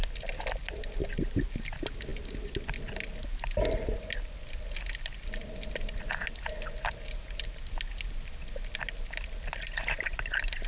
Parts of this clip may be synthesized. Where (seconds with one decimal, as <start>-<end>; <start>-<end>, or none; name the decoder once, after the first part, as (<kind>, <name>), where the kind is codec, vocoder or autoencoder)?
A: none